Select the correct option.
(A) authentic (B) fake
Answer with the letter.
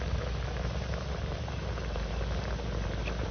A